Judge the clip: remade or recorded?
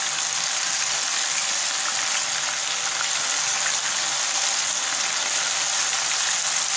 recorded